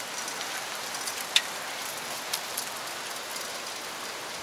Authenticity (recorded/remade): recorded